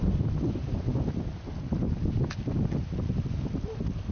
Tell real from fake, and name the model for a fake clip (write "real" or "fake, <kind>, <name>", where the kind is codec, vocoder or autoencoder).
real